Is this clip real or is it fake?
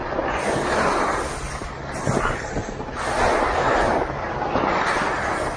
real